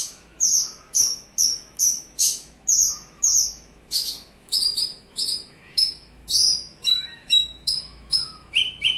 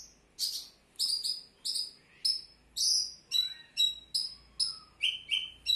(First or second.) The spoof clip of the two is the first